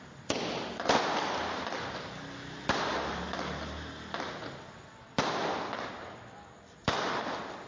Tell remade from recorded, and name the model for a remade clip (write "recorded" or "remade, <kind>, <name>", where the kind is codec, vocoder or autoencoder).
recorded